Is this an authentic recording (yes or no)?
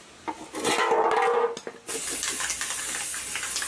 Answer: yes